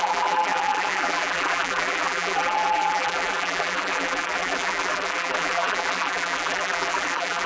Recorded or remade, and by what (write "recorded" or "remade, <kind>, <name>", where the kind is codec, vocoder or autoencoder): remade, vocoder, BigVGAN v2